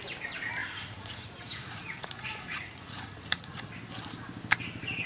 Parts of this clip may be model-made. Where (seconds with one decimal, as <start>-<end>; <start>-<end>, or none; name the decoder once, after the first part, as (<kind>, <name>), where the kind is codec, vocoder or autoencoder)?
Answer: 0.6-3.7 (vocoder, Vocos)

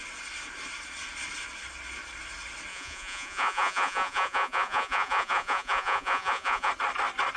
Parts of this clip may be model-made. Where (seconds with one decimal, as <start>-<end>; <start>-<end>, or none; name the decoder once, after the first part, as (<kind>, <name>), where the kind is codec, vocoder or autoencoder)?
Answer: 2.7-6.7 (vocoder, Vocos)

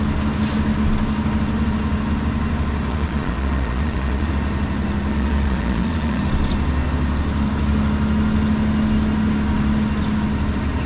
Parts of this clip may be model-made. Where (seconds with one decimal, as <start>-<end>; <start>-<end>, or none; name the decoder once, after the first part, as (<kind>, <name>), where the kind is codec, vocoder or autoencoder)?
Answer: 2.9-4.3 (vocoder, Vocos); 5.1-6.2